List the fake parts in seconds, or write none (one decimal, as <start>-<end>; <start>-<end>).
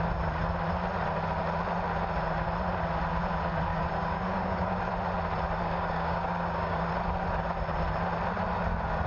3.7-4.8; 5.6-6.9